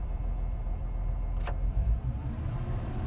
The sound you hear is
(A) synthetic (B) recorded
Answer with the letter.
A